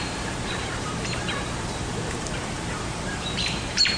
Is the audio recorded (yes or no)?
no